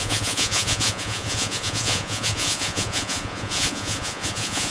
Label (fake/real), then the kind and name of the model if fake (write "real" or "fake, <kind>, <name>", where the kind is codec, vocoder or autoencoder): fake, vocoder, Vocos